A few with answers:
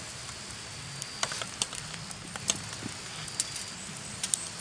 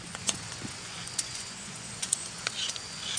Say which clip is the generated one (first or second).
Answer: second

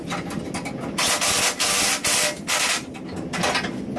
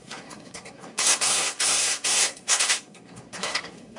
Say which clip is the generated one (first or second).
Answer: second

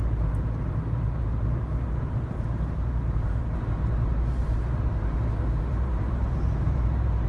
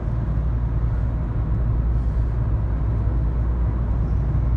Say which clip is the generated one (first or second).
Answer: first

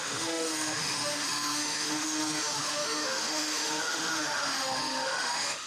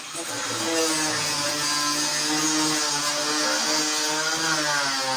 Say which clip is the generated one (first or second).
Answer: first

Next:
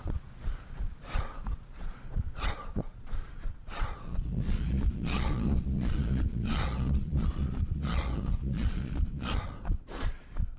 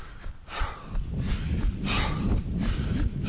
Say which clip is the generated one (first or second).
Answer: first